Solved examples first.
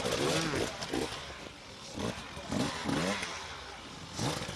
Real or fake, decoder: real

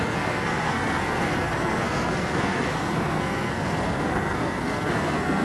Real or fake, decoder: fake, codec, SNAC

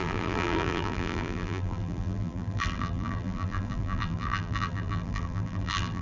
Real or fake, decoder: fake, vocoder, BigVGAN v2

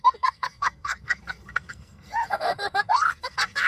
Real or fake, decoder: fake, codec, SNAC